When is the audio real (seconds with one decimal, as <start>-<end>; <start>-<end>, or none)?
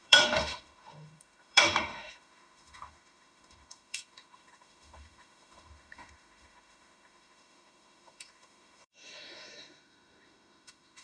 none